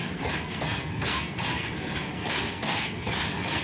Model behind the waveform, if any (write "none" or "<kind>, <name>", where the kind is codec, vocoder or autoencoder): codec, SNAC